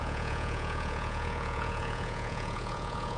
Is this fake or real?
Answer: fake